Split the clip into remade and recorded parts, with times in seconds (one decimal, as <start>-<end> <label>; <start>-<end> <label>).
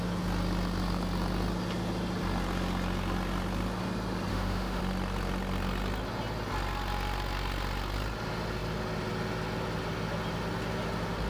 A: 0.0-4.3 recorded; 4.3-4.8 remade; 4.8-11.3 recorded